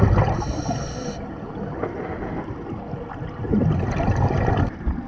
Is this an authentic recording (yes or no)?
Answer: yes